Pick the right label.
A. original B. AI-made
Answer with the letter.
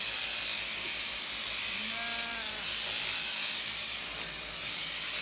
A